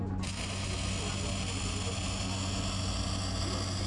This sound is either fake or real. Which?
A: real